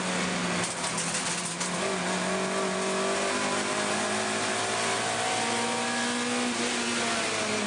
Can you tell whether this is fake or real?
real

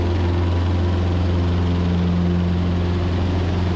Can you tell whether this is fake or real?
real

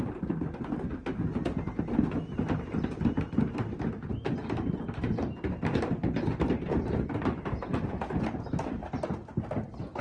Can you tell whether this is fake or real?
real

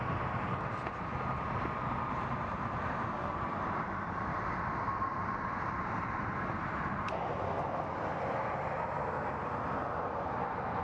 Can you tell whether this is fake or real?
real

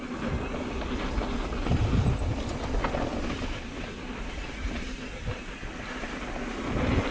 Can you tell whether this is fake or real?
real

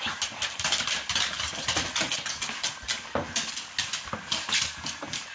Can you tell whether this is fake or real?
real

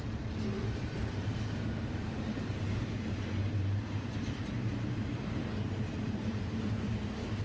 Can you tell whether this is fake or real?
fake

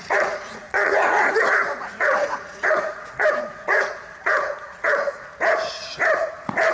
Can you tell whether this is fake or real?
fake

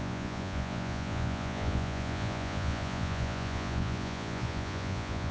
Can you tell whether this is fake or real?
fake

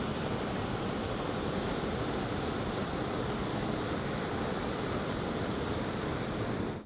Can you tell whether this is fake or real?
fake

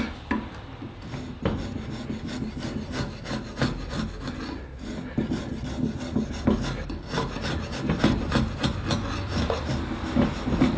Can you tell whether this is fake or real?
real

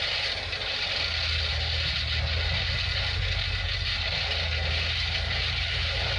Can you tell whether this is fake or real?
real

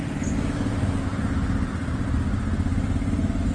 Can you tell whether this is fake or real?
real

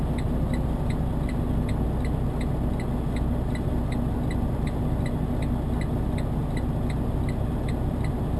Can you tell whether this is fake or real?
real